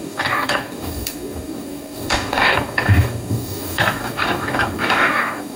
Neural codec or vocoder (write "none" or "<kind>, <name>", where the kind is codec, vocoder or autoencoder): codec, DAC